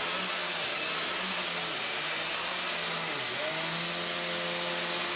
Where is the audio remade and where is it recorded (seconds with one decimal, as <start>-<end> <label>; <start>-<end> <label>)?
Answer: 0.0-5.2 recorded